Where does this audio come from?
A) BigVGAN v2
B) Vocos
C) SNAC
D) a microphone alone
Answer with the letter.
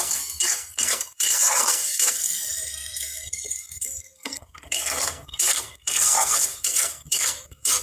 C